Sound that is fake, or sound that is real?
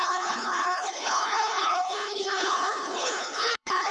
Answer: fake